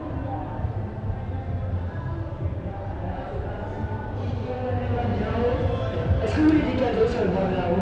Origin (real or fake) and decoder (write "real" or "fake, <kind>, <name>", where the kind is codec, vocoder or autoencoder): real